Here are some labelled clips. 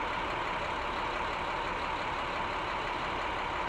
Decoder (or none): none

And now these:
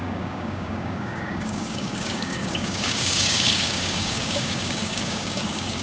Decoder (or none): codec, DAC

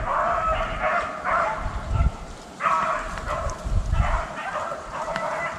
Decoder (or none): vocoder, BigVGAN v2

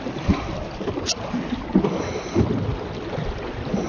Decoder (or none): none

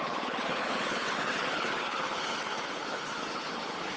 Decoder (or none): codec, HILCodec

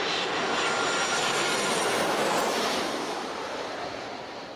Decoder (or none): none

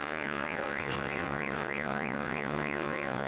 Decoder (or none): vocoder, WaveNeXt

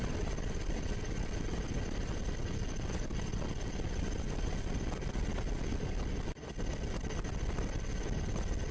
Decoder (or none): none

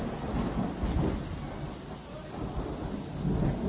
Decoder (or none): none